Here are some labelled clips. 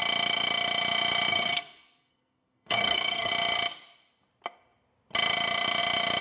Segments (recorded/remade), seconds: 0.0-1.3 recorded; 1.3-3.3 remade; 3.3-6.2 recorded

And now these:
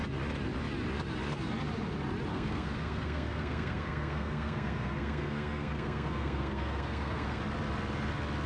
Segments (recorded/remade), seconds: 0.0-2.3 recorded; 2.3-7.4 remade; 7.4-8.5 recorded

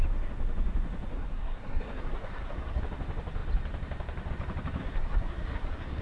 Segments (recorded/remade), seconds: 0.0-1.1 recorded; 1.1-2.8 remade; 2.8-4.8 recorded; 4.8-6.0 remade